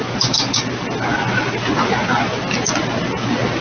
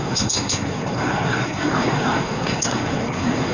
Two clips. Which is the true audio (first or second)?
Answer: first